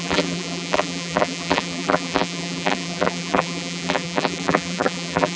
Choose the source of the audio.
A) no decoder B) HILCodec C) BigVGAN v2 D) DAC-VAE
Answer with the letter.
C